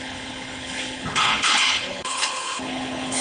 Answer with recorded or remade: remade